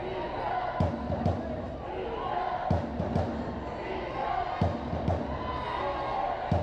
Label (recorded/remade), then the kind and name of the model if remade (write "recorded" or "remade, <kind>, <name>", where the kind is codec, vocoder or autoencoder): recorded